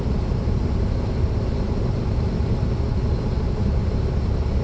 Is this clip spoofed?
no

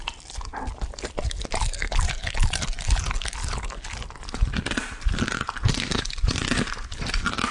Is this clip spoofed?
no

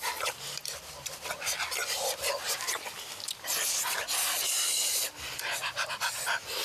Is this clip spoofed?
no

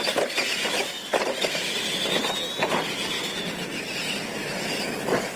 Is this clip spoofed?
no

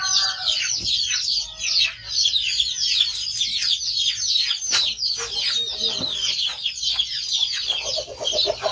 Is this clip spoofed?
no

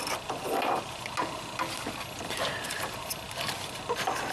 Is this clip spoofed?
no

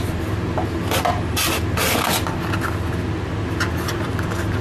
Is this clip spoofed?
no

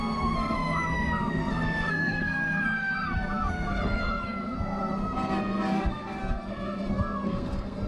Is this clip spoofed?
yes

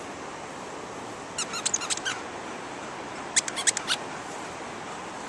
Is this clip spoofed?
no